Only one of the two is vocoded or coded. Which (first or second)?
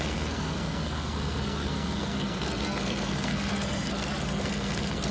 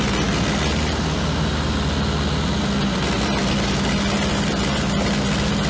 first